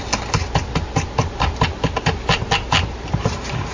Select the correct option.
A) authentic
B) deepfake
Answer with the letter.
A